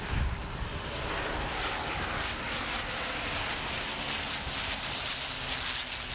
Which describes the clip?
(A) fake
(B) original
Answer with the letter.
B